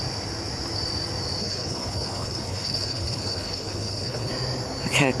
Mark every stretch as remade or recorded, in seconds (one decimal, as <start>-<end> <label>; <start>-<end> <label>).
0.0-1.4 recorded; 1.4-4.3 remade; 4.3-5.2 recorded